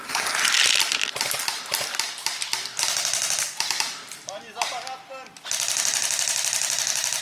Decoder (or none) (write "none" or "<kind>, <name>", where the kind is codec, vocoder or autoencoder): none